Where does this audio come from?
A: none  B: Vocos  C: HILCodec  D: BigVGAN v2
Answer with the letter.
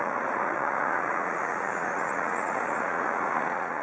B